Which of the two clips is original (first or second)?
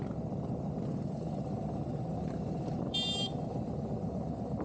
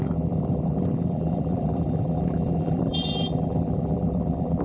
first